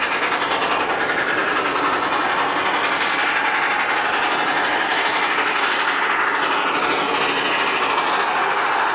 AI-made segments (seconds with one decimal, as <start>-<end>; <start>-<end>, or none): none